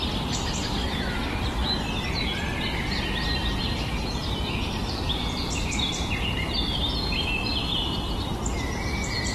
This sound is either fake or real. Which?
fake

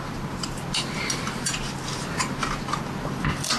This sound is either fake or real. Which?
real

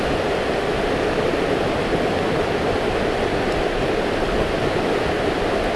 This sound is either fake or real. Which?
real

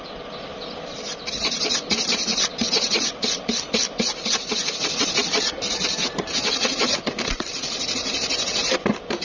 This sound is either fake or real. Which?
real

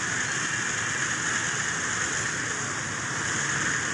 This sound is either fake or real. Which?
real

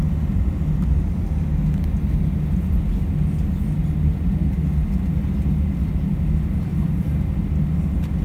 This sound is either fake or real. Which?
real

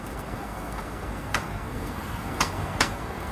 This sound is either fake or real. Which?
fake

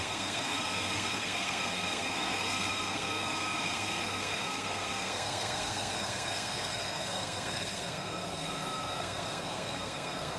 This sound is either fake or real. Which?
fake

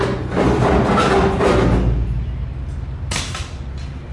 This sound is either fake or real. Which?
real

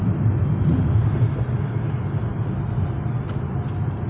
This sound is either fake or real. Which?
real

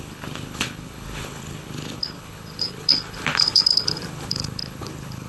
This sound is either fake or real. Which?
fake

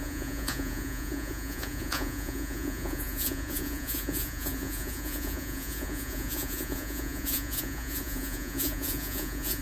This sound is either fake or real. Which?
fake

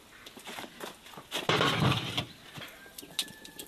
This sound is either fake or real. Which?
real